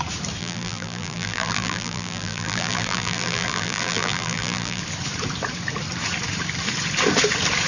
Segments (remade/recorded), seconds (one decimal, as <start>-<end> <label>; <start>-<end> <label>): 0.0-0.4 recorded; 0.4-4.8 remade; 4.8-7.7 recorded